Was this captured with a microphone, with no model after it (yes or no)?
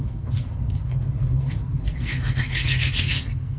no